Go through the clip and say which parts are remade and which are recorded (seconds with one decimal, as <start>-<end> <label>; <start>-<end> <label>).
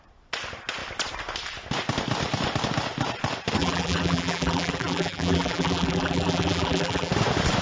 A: 0.0-3.6 recorded; 3.6-7.1 remade; 7.1-7.6 recorded